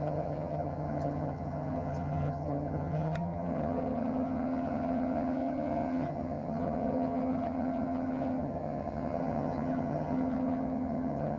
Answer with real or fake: fake